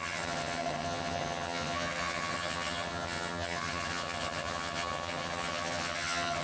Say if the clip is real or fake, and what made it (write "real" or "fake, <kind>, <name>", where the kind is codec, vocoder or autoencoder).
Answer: fake, vocoder, HiFi-GAN